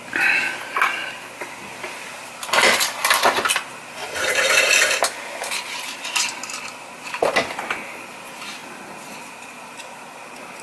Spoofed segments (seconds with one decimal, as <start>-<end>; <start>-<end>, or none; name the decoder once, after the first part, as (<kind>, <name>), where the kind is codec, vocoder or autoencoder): 4.0-4.7 (vocoder, BigVGAN v2)

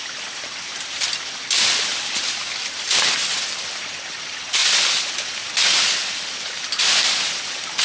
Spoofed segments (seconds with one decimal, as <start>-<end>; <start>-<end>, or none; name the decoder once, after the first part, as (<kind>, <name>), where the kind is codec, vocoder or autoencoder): none